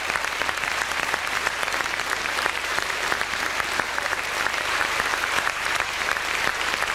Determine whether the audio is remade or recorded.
remade